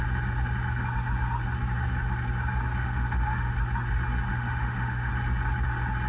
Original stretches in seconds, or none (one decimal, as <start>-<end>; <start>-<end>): 0.0-2.8; 3.5-4.3; 5.1-6.1